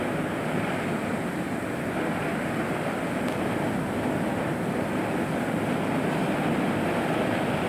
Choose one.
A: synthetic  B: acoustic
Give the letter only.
B